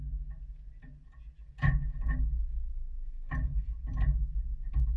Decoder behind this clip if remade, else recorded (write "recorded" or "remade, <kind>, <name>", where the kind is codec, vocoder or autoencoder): recorded